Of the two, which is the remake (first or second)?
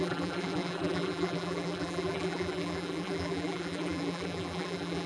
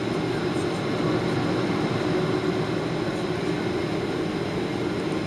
first